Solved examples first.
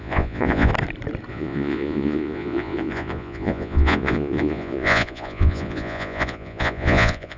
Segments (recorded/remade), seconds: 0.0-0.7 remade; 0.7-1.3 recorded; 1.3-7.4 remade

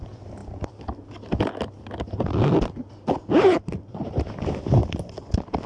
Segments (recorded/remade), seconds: 0.0-5.7 recorded

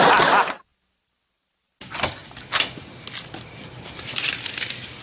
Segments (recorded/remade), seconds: 0.0-5.0 recorded

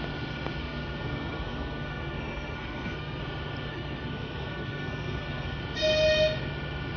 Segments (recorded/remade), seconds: 0.0-0.6 recorded; 0.6-3.2 remade; 3.2-3.7 recorded; 3.7-5.6 remade; 5.6-7.0 recorded

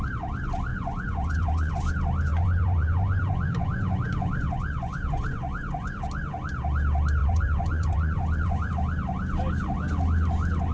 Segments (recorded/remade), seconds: 0.0-0.7 recorded; 0.7-1.7 remade; 1.7-2.3 recorded; 2.3-6.0 remade; 6.0-7.2 recorded; 7.2-8.7 remade; 8.7-10.7 recorded

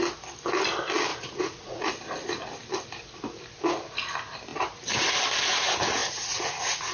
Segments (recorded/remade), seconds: 0.0-1.1 recorded; 1.1-1.9 remade; 1.9-6.0 recorded; 6.0-6.9 remade